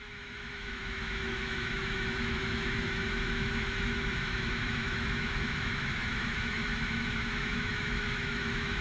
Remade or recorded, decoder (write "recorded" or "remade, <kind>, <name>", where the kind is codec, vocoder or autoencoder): remade, autoencoder, DAC-VAE